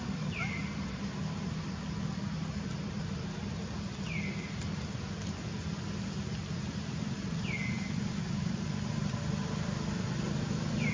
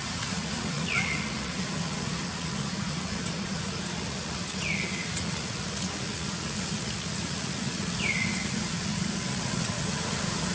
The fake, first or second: second